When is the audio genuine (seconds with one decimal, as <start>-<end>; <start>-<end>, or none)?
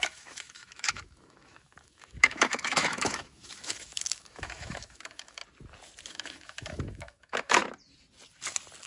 5.4-6.1; 7.6-8.9